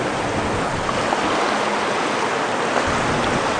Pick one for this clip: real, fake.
real